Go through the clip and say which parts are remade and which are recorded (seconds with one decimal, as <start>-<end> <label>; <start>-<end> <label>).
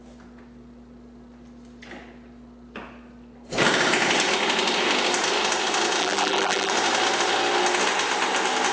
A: 0.0-6.0 recorded; 6.0-6.7 remade; 6.7-8.7 recorded